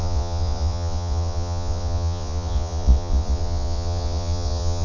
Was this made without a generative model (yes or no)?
no